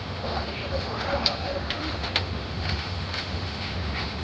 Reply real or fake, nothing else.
fake